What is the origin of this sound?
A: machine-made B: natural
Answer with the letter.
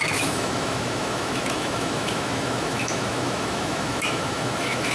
A